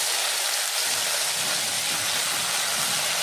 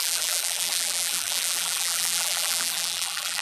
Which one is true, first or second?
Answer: first